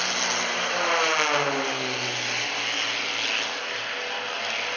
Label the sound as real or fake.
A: real